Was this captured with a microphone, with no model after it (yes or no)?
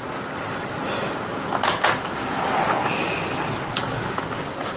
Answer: yes